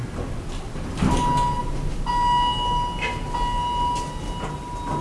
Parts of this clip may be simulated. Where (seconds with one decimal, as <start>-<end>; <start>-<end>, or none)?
none